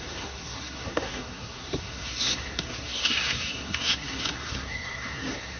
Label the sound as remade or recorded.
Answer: remade